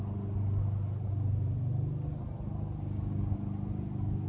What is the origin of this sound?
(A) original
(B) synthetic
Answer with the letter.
A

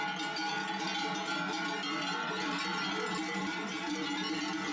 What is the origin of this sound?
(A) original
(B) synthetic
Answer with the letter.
A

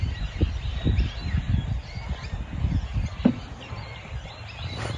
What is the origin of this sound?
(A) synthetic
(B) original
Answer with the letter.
B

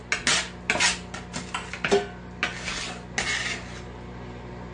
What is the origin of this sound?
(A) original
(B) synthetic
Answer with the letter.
A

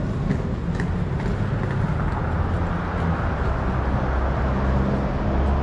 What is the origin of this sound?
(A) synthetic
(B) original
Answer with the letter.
B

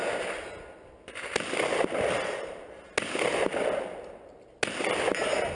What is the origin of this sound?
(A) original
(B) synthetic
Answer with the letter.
A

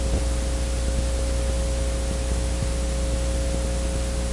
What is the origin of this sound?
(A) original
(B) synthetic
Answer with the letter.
A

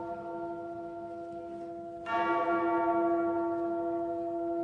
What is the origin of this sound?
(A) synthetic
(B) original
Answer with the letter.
B